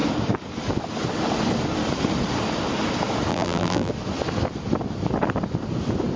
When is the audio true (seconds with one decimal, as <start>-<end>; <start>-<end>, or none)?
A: 0.0-3.3; 3.9-6.2